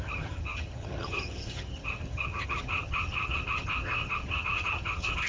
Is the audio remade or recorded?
remade